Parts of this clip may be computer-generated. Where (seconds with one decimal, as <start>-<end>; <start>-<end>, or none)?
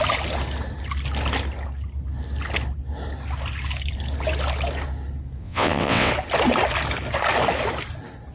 5.4-6.1